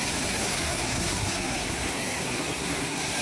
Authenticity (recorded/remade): remade